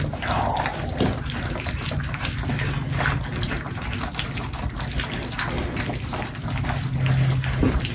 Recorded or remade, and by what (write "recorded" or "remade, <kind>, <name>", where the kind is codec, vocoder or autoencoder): recorded